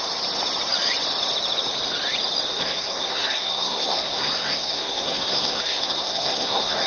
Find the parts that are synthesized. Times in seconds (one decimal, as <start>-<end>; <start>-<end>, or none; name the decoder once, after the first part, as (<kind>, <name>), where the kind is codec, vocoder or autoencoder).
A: 2.5-6.9 (codec, SNAC)

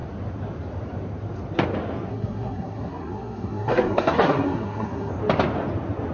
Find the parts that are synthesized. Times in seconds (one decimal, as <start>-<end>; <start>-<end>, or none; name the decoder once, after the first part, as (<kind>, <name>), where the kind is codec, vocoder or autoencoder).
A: 2.1-5.1 (codec, SNAC)

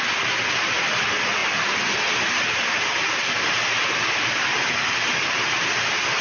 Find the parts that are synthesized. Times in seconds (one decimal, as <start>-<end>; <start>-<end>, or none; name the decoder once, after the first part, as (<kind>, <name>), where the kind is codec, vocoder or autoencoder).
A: none

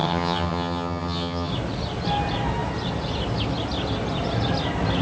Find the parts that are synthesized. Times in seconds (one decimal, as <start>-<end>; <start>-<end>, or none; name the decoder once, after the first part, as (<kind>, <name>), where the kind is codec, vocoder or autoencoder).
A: 0.0-1.5 (vocoder, HiFi-GAN)

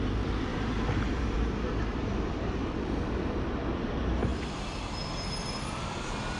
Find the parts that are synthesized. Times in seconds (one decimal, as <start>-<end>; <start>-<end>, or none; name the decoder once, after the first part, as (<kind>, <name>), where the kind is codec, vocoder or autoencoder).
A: 0.5-2.3 (vocoder, BigVGAN v2)

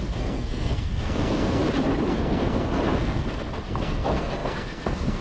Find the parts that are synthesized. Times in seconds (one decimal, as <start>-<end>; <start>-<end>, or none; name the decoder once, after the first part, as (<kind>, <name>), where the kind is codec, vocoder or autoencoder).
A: 0.0-1.6 (codec, SNAC); 2.1-5.2

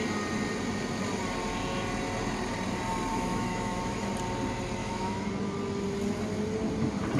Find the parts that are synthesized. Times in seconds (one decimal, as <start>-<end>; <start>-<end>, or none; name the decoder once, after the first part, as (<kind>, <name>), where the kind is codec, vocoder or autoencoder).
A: 3.1-4.1 (autoencoder, DAC-VAE); 4.8-5.3